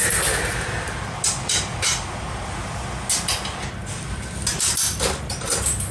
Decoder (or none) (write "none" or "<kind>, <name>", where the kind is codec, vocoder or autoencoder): none